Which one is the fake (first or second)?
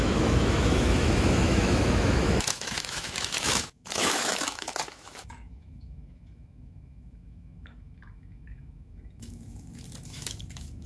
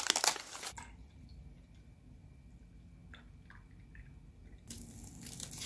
first